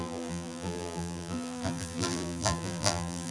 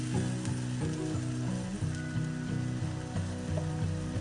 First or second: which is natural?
second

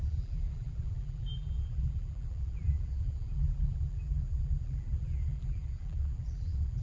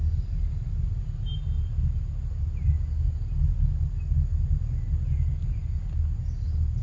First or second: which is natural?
second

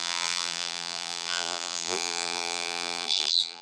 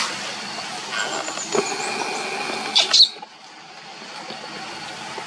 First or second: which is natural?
second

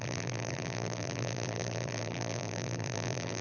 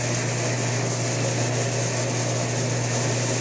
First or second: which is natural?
second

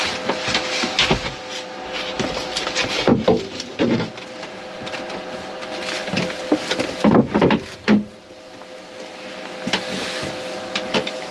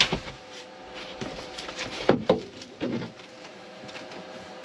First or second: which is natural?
first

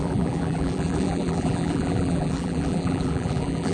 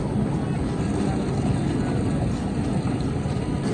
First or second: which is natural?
second